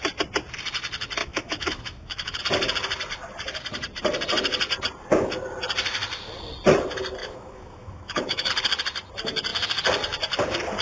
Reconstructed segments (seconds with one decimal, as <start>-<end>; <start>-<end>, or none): 1.2-2.4; 7.2-8.5